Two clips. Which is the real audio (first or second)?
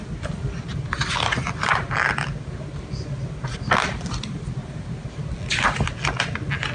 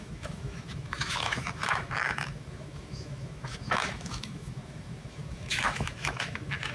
first